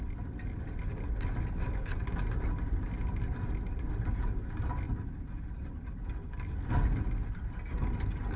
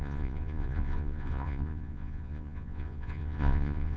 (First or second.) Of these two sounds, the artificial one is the second